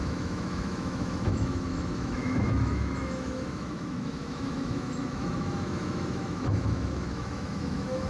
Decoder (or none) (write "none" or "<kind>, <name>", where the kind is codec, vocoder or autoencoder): autoencoder, DAC-VAE